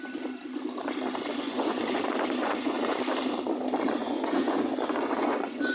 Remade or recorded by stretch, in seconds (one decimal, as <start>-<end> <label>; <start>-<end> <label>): 0.0-1.3 recorded; 1.3-2.0 remade; 2.0-2.4 recorded; 2.4-3.0 remade; 3.0-4.0 recorded; 4.0-5.7 remade